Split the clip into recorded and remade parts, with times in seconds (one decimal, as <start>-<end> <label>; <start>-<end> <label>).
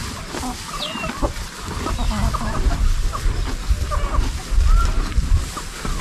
0.0-6.0 recorded